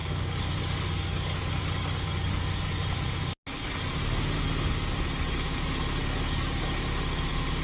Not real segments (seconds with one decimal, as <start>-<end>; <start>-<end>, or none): 0.0-2.5; 6.0-6.6